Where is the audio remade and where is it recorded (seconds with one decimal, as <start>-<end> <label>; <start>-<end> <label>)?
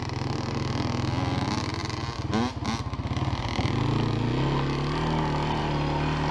0.0-6.3 recorded